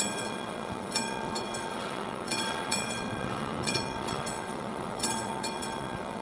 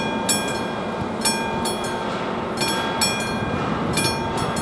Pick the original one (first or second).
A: second